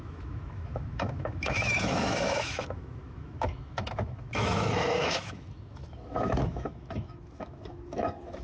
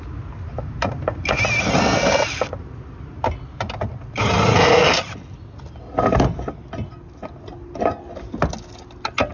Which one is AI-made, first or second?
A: first